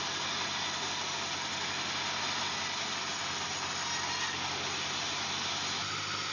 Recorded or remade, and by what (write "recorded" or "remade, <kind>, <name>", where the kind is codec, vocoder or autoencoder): recorded